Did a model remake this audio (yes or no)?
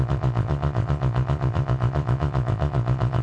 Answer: yes